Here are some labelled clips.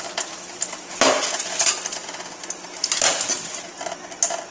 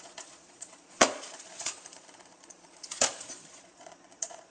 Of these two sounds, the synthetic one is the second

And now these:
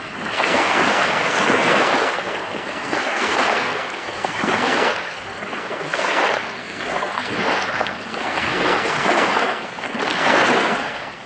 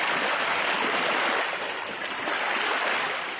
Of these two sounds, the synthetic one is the first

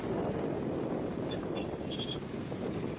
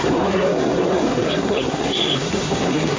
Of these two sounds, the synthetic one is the second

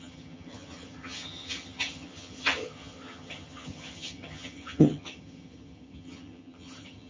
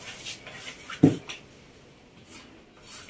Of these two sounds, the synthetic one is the first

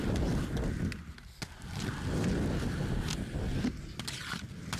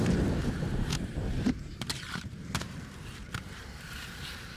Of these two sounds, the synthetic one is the second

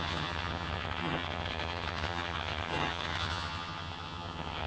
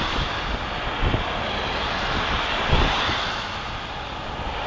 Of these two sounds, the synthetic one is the first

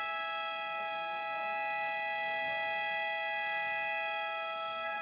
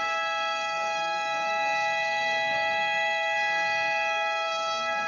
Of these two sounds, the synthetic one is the second